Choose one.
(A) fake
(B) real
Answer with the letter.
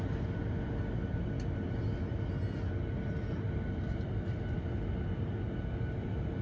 B